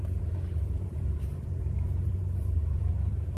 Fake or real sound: fake